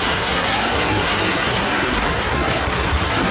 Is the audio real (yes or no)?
no